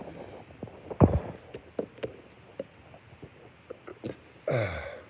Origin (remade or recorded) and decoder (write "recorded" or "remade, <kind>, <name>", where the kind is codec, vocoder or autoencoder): recorded